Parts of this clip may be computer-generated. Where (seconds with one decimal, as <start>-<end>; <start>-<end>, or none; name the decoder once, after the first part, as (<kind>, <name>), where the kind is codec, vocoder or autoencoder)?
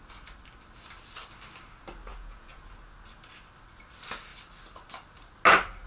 2.1-2.6 (vocoder, Vocos)